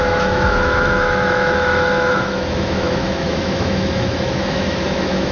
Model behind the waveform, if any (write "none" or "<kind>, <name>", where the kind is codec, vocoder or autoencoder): autoencoder, DAC-VAE